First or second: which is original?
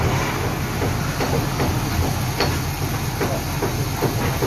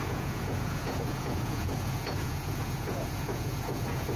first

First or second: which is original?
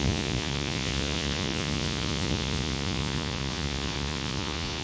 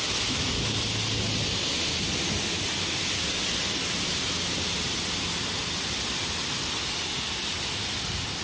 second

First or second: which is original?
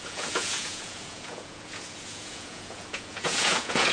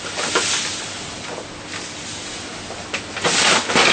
second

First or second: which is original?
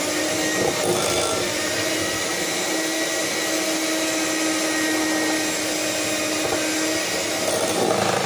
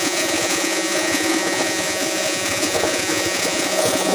first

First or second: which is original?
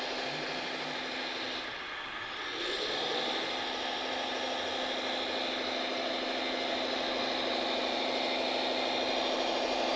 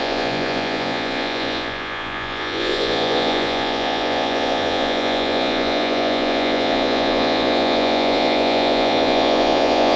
first